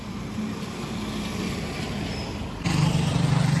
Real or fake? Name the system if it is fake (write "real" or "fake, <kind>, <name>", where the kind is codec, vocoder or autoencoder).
real